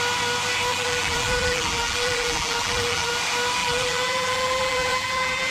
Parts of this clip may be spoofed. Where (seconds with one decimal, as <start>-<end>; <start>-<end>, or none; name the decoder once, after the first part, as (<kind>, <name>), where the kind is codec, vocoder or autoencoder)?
0.7-3.1 (vocoder, BigVGAN v2); 3.6-5.5